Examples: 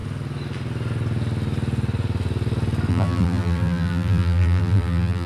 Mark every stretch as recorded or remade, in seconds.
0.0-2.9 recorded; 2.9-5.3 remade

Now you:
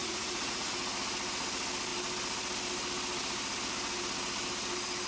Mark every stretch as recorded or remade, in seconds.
0.0-0.7 remade; 0.7-5.1 recorded

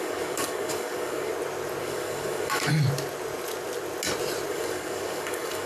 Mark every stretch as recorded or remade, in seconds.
0.0-1.3 remade; 1.3-1.8 recorded; 1.8-2.7 remade; 2.7-4.5 recorded; 4.5-5.7 remade

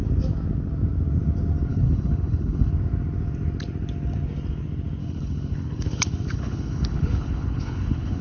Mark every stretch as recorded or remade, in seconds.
0.0-1.7 recorded; 1.7-2.7 remade; 2.7-5.0 recorded; 5.0-8.2 remade